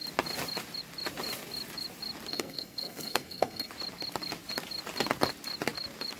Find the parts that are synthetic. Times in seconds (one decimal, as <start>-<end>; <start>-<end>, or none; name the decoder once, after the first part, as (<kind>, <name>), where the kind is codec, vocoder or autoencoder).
2.3-3.7 (codec, SNAC)